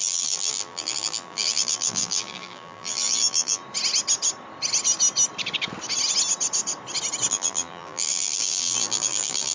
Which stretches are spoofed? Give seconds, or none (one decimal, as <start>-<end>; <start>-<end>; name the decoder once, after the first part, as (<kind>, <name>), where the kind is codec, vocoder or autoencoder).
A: 0.0-3.6 (vocoder, BigVGAN v2); 7.3-9.5